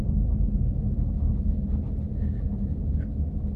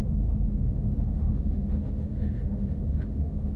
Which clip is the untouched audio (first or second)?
first